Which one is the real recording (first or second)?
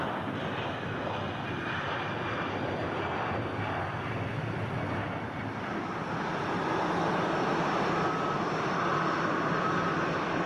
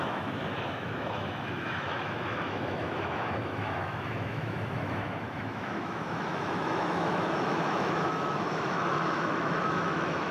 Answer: first